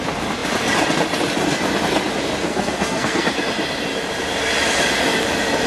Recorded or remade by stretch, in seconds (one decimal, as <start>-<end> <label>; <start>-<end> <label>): 0.0-2.4 recorded; 2.4-3.4 remade; 3.4-5.7 recorded